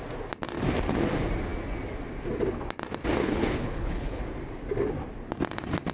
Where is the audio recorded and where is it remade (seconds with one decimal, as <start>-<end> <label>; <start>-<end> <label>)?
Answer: 0.0-3.2 recorded; 3.2-4.2 remade; 4.2-5.9 recorded

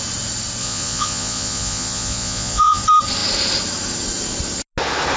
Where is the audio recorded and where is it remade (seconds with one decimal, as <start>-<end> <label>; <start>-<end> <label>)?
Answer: 0.0-0.6 recorded; 0.6-2.8 remade; 2.8-5.2 recorded

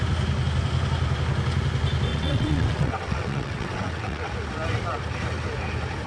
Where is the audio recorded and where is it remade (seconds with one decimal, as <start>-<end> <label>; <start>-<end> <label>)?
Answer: 0.0-2.1 recorded; 2.1-4.3 remade; 4.3-6.1 recorded

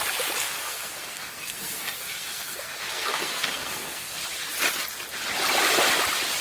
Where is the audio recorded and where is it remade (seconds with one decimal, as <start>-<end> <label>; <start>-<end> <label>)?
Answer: 0.0-0.4 recorded; 0.4-4.2 remade; 4.2-6.4 recorded